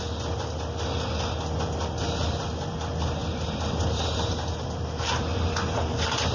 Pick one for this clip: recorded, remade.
remade